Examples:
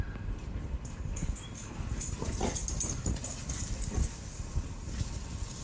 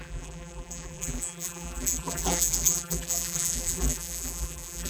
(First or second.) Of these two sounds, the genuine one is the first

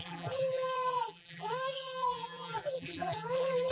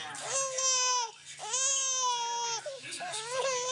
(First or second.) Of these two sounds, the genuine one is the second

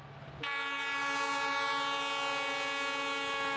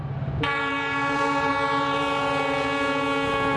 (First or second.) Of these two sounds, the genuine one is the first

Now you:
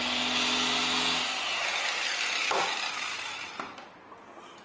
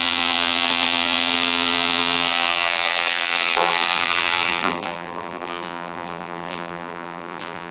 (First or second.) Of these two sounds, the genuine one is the first